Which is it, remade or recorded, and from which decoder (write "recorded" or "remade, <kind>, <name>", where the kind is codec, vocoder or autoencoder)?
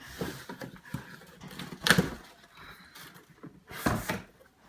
recorded